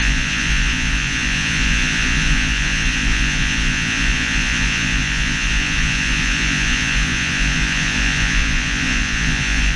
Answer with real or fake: fake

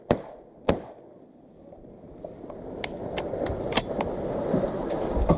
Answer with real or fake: real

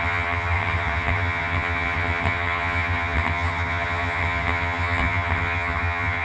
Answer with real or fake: fake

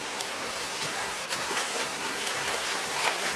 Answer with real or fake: fake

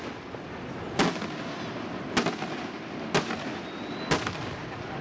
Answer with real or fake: real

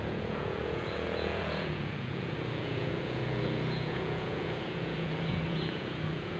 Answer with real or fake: fake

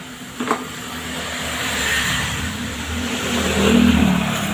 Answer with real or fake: fake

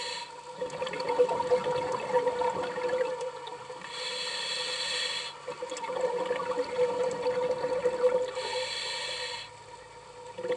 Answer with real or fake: real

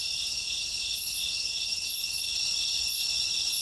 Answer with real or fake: real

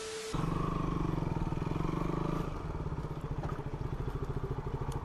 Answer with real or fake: real